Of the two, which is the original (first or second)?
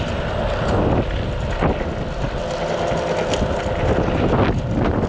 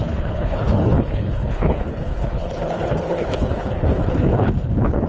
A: first